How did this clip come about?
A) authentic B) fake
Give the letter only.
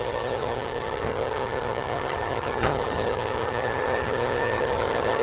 B